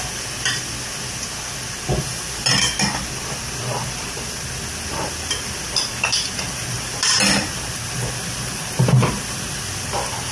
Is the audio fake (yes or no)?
no